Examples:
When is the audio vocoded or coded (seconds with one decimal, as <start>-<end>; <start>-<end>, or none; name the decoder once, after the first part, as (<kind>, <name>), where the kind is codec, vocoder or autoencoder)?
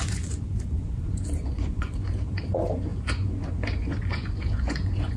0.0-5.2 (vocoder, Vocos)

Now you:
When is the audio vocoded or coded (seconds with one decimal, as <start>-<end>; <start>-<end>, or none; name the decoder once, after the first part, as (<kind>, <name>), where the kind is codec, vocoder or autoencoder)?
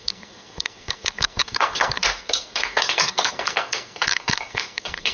0.0-5.1 (codec, SNAC)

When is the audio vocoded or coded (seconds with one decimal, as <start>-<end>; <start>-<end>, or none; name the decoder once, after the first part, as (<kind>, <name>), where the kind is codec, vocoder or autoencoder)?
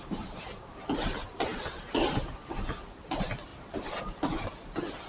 none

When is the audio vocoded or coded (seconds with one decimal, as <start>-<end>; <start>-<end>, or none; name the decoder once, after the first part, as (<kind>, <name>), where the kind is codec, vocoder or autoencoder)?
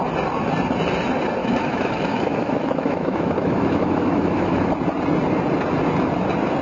1.4-4.7 (autoencoder, DAC-VAE)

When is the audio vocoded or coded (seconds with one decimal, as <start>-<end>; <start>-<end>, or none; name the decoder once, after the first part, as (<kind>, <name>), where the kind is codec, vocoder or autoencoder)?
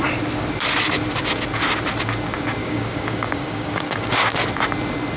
2.6-4.1 (codec, DAC)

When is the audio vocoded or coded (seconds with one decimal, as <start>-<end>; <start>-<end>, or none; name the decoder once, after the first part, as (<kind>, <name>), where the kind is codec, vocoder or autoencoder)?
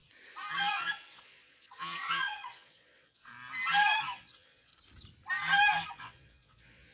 0.7-3.3 (vocoder, Vocos); 4.0-4.7; 5.9-6.9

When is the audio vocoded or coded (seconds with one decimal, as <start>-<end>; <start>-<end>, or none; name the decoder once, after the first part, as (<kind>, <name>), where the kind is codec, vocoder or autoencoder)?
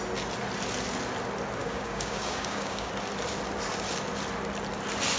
1.6-2.9 (codec, DAC)